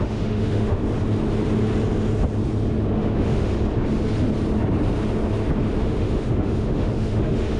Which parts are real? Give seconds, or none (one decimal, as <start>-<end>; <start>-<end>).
0.8-2.9; 3.5-5.8